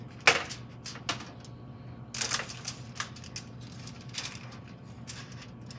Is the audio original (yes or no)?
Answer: yes